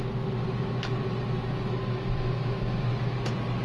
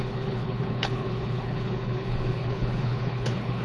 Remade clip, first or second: second